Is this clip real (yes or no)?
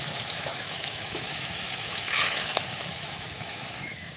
no